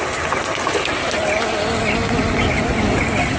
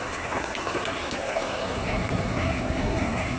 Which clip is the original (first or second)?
first